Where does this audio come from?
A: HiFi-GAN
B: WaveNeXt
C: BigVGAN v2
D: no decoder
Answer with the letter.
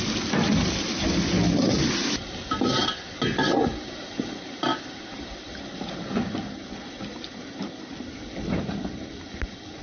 D